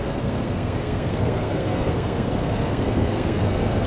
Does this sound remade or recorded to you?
remade